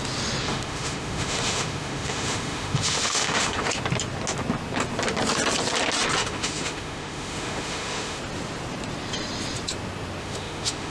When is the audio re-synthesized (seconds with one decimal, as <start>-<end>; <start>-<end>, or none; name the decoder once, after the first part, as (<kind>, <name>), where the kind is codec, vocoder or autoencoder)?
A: 0.4-3.8 (autoencoder, DAC-VAE); 6.2-8.2; 10.2-10.9